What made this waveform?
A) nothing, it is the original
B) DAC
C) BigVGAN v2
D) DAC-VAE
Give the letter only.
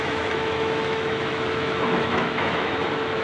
D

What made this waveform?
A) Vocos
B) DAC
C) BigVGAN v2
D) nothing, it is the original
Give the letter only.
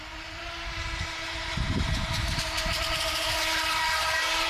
C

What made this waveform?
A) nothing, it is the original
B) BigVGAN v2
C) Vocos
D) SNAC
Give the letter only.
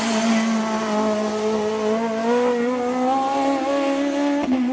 A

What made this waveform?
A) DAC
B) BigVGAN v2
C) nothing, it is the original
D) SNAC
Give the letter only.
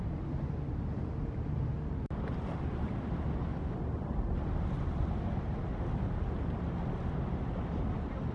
C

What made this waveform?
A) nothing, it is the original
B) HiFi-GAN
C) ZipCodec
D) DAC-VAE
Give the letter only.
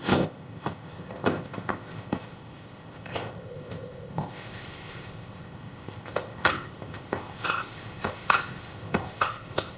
C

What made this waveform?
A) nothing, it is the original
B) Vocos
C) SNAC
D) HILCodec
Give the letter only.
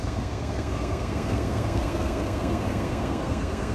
C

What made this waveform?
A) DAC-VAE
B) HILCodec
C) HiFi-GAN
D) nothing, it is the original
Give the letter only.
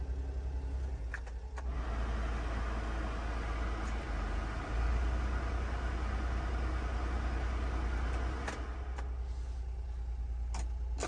D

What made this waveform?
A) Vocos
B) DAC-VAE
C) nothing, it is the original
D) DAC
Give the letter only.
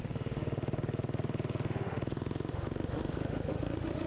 B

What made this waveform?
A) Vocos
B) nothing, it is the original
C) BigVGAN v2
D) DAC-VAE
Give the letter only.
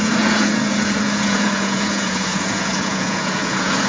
A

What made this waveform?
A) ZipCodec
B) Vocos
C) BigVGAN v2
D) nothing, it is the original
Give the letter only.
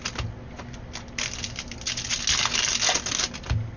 D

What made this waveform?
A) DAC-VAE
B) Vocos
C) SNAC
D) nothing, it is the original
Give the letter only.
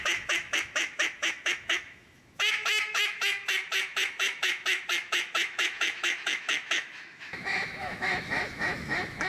A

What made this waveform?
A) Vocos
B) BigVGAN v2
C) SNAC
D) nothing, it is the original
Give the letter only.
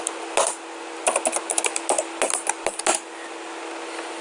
D